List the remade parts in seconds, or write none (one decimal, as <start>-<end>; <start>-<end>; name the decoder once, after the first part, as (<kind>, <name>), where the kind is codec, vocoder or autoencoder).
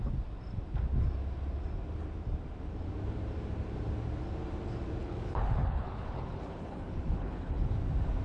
5.0-7.7 (codec, HILCodec)